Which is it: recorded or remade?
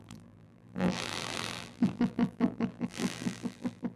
remade